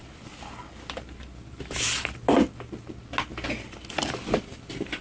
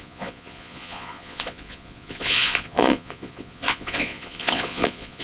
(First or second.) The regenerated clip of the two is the second